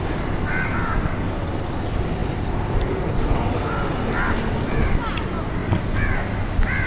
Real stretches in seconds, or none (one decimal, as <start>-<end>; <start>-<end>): 0.0-6.9